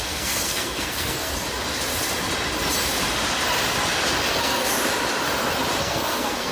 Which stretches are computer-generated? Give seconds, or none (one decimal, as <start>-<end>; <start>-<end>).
0.0-1.3; 4.3-4.8; 5.8-6.5

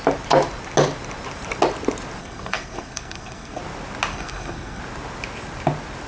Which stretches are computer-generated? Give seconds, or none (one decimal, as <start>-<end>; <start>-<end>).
2.2-3.6; 4.1-4.8